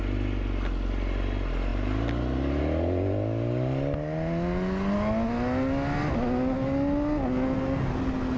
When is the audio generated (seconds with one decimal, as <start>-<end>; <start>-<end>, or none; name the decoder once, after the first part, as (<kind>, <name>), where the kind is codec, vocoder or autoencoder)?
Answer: none

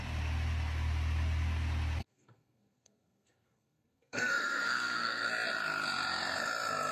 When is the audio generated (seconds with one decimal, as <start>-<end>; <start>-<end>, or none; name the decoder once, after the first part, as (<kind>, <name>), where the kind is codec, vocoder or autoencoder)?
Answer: 2.0-5.3 (codec, SNAC)

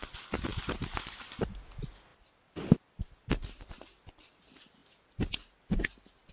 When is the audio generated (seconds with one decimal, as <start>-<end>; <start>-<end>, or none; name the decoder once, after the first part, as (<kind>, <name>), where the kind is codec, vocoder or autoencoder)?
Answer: none

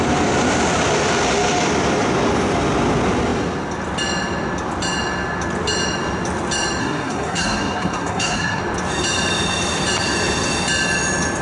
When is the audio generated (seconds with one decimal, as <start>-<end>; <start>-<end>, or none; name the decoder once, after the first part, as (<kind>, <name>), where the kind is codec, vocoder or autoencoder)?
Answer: 6.8-8.6 (codec, SNAC)

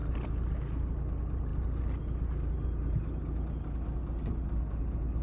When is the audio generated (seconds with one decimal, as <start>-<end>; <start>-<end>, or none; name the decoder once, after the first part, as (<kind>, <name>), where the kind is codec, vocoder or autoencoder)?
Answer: none

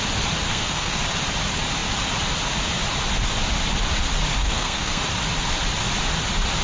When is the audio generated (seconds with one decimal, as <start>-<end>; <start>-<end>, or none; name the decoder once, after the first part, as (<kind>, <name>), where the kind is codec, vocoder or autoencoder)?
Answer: 0.5-1.0 (codec, SNAC); 4.4-5.0